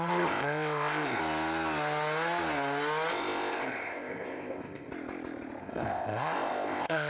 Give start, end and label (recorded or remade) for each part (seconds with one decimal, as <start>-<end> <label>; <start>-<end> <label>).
0.0-1.2 remade; 1.2-3.1 recorded; 3.1-4.9 remade; 4.9-5.6 recorded; 5.6-7.1 remade